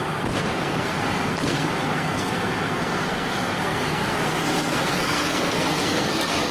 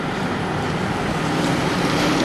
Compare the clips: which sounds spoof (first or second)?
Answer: first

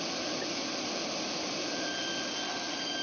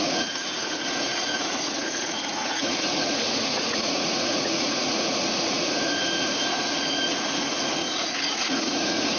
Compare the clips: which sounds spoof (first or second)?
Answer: second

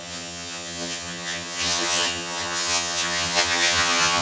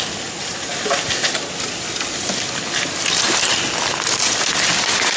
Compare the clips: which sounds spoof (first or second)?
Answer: first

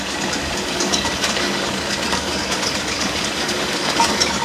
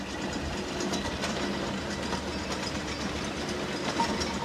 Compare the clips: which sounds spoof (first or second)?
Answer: first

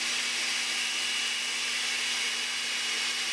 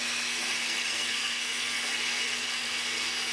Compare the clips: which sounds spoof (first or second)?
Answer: second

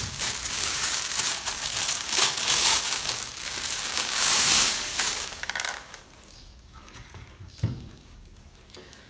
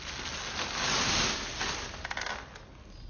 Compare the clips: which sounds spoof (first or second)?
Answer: first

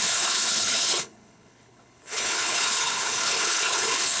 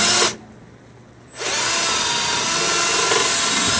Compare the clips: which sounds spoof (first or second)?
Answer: first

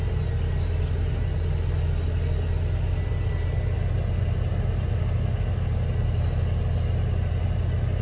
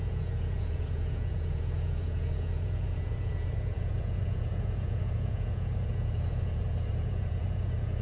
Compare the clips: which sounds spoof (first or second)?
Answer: second